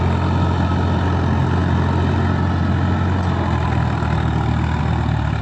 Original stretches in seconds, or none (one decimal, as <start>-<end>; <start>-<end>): 0.0-5.4